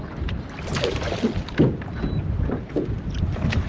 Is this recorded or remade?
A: recorded